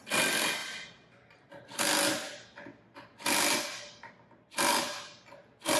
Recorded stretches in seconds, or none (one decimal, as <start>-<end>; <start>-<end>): 0.0-5.8